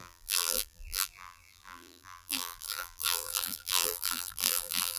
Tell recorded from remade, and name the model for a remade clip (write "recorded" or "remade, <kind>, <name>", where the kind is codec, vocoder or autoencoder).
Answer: remade, vocoder, BigVGAN v2